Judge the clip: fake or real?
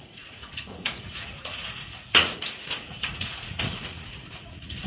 fake